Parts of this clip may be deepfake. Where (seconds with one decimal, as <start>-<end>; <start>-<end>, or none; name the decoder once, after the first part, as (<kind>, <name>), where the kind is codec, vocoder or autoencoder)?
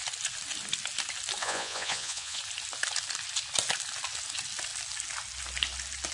1.4-2.4 (vocoder, Vocos)